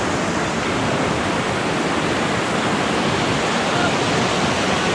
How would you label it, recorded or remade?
recorded